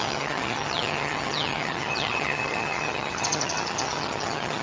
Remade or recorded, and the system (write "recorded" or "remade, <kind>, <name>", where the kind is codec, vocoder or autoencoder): remade, vocoder, HiFi-GAN